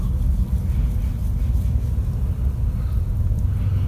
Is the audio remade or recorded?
recorded